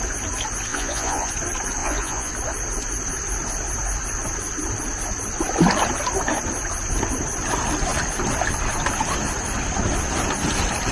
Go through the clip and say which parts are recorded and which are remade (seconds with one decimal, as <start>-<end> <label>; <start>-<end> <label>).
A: 0.0-0.7 recorded; 0.7-1.3 remade; 1.3-1.8 recorded; 1.8-2.3 remade; 2.3-10.9 recorded